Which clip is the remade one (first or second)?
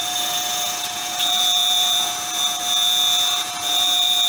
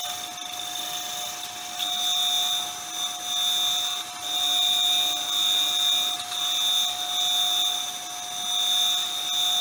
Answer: first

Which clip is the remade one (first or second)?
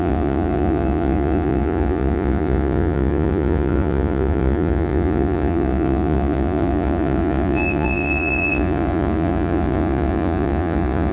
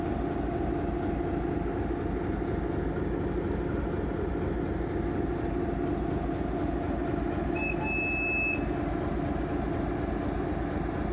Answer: first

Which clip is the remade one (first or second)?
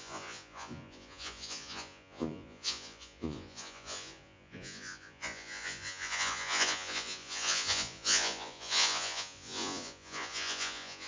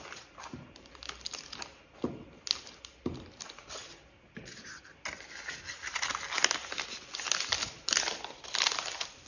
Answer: first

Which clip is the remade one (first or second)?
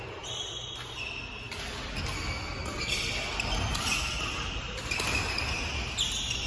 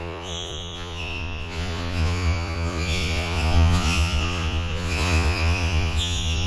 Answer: second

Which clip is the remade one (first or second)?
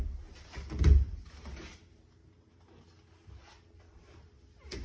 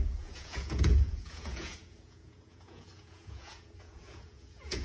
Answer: second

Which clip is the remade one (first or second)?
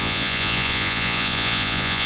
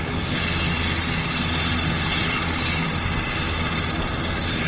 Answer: first